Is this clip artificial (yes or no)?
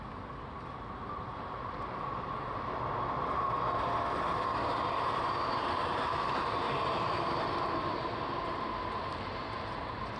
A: no